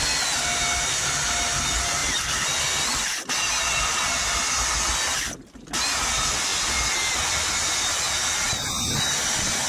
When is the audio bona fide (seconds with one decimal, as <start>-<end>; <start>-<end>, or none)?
0.0-9.7